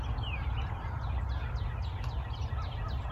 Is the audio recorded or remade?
recorded